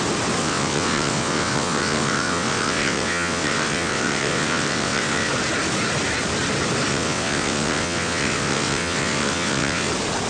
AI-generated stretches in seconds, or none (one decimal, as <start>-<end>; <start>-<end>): 0.4-5.3; 6.9-9.9